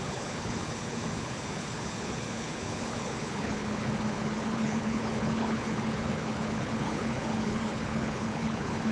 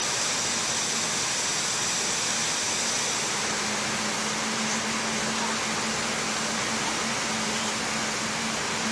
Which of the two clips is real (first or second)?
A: second